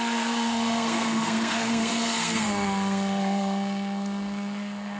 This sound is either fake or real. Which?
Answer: fake